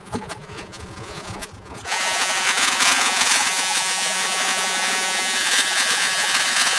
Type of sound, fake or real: fake